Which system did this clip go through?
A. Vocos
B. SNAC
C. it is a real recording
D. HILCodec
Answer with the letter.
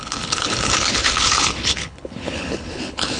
D